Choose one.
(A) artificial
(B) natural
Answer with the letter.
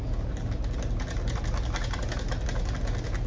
B